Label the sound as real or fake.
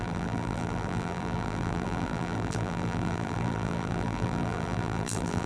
fake